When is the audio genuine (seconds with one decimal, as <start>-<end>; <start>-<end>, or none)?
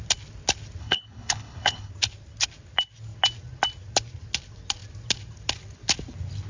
0.0-0.8; 1.9-6.5